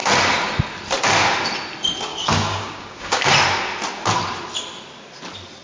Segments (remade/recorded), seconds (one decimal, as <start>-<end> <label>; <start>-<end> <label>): 0.0-2.1 recorded; 2.1-3.3 remade; 3.3-5.6 recorded